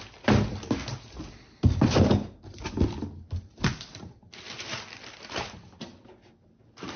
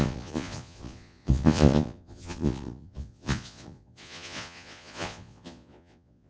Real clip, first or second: first